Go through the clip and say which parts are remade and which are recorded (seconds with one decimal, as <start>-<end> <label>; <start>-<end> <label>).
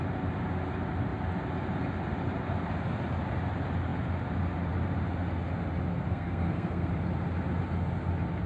0.0-5.9 recorded; 5.9-6.9 remade; 6.9-8.5 recorded